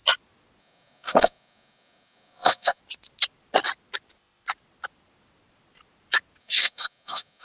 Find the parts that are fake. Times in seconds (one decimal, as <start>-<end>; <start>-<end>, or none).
0.6-2.8; 6.4-7.4